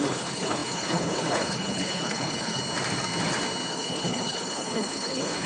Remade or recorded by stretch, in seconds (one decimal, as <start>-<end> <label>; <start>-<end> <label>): 0.0-2.6 remade; 2.6-3.7 recorded; 3.7-5.5 remade